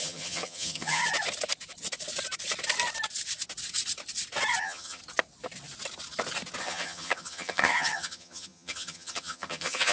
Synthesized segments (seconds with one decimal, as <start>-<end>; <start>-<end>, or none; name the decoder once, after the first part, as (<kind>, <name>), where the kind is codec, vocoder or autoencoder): 0.0-1.0 (vocoder, HiFi-GAN); 4.6-5.0; 6.6-9.9